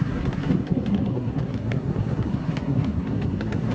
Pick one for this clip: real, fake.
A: fake